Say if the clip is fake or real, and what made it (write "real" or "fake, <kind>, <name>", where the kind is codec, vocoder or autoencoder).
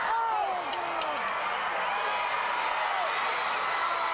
real